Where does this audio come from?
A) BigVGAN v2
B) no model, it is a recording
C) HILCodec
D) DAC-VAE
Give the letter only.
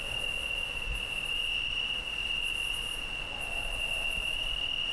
B